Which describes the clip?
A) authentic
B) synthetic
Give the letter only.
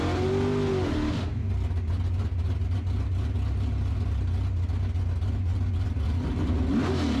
A